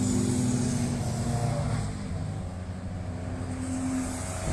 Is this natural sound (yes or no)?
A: yes